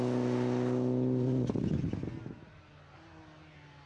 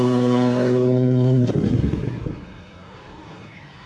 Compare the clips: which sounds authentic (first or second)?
first